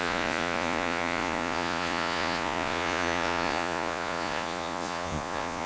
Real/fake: fake